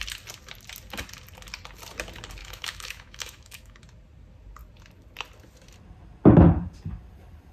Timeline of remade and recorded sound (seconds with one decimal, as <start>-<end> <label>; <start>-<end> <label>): 0.0-2.4 recorded; 2.4-3.8 remade; 3.8-7.5 recorded